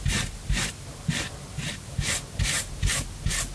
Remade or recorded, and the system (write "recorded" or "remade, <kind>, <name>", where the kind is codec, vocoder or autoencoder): recorded